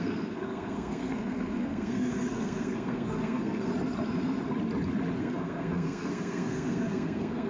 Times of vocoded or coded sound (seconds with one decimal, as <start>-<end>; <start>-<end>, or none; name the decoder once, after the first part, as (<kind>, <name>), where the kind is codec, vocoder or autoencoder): 0.0-3.7 (codec, SNAC); 5.2-7.5